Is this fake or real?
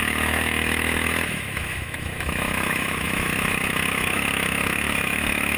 fake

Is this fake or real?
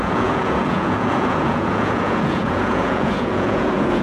fake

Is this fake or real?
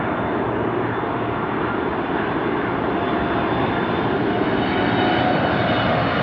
real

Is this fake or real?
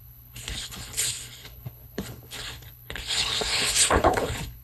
fake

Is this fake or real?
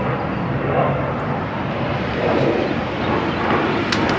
real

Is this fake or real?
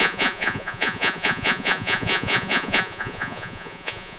fake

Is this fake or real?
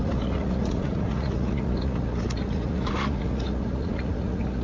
fake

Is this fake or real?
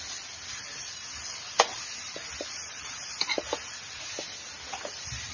real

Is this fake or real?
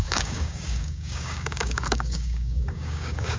fake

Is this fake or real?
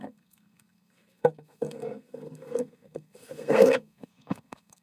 fake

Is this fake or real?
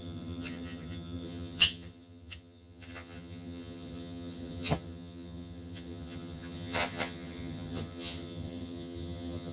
fake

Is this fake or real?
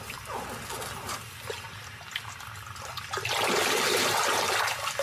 real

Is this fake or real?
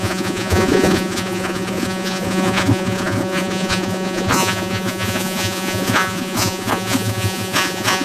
fake